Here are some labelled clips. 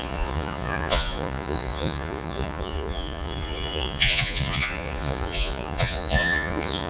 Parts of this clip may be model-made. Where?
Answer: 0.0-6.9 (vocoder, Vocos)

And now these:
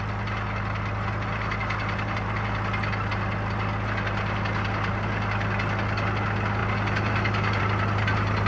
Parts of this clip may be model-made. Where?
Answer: none

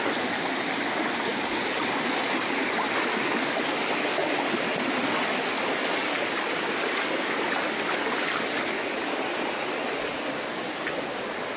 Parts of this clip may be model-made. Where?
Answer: none

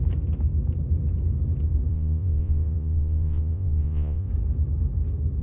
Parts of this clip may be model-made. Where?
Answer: 1.9-4.3 (vocoder, Vocos)